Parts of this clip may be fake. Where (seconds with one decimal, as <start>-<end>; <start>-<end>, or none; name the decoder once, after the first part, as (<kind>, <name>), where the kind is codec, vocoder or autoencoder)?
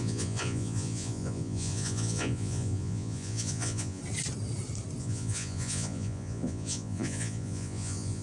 0.0-4.0 (vocoder, Vocos); 5.0-8.2